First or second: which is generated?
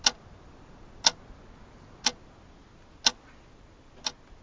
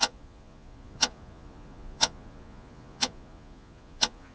second